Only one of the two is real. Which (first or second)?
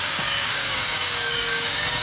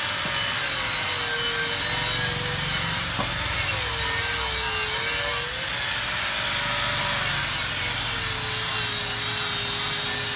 second